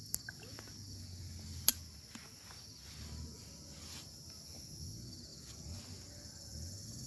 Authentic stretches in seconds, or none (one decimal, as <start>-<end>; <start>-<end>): 0.0-7.1